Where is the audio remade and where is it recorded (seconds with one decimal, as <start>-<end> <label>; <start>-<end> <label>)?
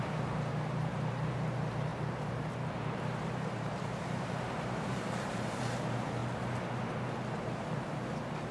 0.0-6.2 remade; 6.2-7.3 recorded; 7.3-8.5 remade